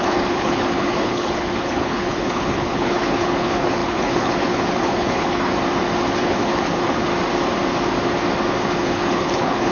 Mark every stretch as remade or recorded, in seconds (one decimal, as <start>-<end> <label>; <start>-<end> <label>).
0.0-5.5 remade; 5.5-6.2 recorded; 6.2-7.1 remade; 7.1-8.6 recorded; 8.6-9.7 remade